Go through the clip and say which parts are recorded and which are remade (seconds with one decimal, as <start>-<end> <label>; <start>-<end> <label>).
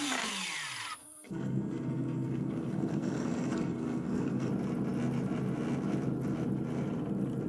0.0-1.0 recorded; 1.0-4.5 remade; 4.5-7.5 recorded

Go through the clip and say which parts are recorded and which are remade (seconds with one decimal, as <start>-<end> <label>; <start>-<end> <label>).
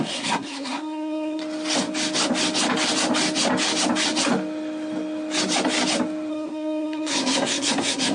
0.0-1.4 remade; 1.4-6.3 recorded; 6.3-8.1 remade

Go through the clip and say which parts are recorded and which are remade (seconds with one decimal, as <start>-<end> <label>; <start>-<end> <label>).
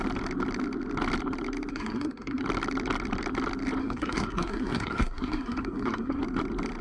0.0-1.7 recorded; 1.7-2.4 remade; 2.4-3.8 recorded; 3.8-6.2 remade; 6.2-6.8 recorded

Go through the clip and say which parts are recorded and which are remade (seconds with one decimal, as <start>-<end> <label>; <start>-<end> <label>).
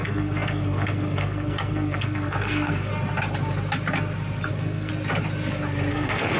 0.0-2.9 remade; 2.9-4.5 recorded; 4.5-4.9 remade; 4.9-5.9 recorded; 5.9-6.4 remade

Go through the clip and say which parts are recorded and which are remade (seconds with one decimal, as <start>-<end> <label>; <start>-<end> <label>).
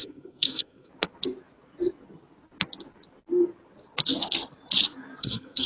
0.0-0.9 remade; 0.9-5.2 recorded; 5.2-5.7 remade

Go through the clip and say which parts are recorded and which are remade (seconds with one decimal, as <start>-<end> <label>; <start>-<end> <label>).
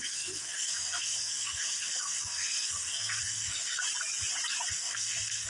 0.0-3.8 remade; 3.8-4.7 recorded; 4.7-5.5 remade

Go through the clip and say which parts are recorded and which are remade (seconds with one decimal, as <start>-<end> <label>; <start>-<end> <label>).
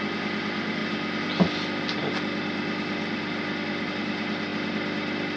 0.0-5.4 recorded